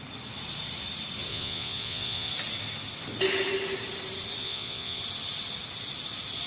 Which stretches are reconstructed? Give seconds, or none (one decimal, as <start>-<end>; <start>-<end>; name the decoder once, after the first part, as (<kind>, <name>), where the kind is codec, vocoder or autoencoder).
1.3-2.3 (vocoder, Vocos); 4.4-5.0